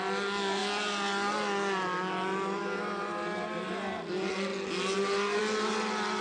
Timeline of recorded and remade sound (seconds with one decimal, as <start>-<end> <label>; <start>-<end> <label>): 0.0-6.2 recorded